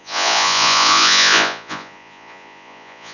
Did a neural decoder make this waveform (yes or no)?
yes